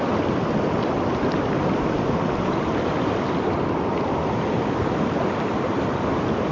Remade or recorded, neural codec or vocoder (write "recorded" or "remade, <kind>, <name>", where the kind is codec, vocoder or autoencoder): recorded